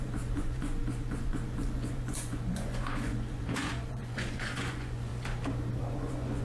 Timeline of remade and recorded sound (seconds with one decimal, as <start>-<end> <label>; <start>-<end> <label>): 0.0-5.1 remade; 5.1-5.8 recorded; 5.8-6.4 remade